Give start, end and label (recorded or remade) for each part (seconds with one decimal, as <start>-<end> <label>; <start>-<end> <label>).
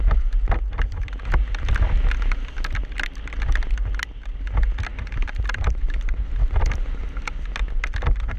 0.0-4.9 recorded; 4.9-6.9 remade; 6.9-8.4 recorded